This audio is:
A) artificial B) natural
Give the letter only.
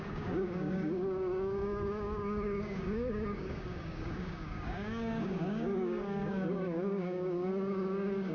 A